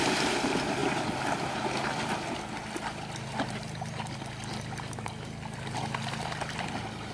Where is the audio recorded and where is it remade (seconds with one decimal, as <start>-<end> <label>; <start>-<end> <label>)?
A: 0.0-7.1 recorded